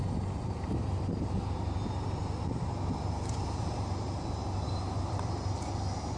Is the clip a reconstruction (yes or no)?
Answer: no